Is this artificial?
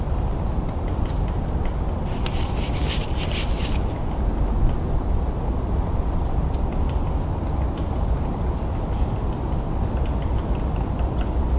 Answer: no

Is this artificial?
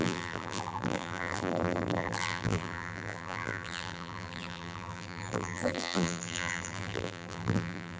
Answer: yes